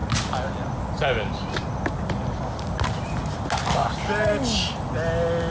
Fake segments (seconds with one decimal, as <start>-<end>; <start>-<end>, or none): none